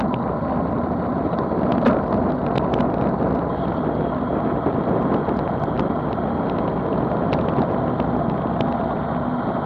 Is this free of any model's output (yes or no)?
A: yes